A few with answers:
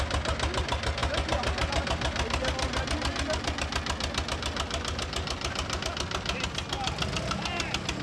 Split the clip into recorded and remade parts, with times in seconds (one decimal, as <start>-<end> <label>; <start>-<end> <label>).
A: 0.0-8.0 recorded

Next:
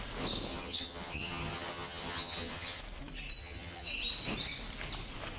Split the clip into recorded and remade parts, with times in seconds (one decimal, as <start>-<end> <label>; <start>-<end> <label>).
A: 0.0-0.5 recorded; 0.5-2.8 remade; 2.8-3.4 recorded; 3.4-3.9 remade; 3.9-5.4 recorded

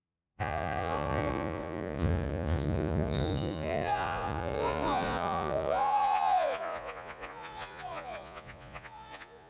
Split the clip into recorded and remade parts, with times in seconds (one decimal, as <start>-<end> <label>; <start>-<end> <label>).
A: 0.0-9.5 remade